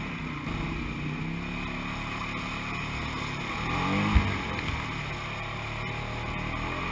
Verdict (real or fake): real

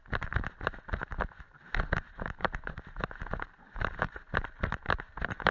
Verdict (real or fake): fake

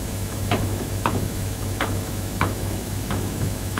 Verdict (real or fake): fake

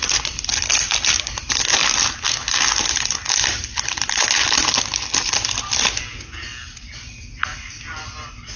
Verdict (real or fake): real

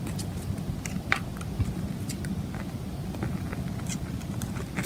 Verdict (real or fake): real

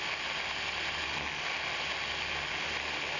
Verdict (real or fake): real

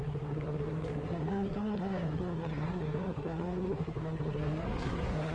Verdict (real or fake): fake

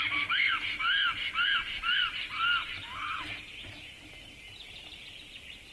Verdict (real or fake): real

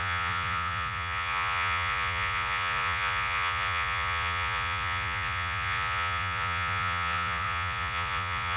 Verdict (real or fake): fake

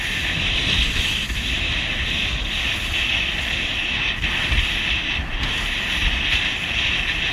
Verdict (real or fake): real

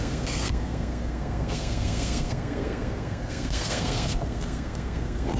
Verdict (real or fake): fake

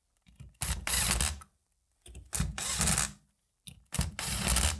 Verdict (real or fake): real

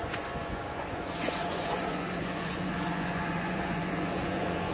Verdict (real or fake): fake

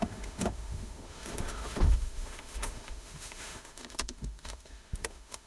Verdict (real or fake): fake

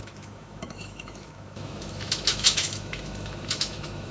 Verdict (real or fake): fake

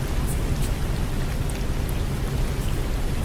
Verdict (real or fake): real